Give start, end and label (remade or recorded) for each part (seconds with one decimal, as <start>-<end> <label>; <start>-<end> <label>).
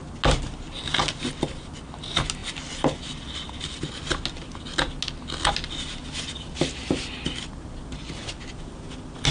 0.0-9.3 recorded